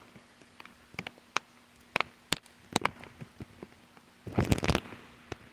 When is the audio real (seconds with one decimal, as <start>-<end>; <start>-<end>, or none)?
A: 0.0-5.5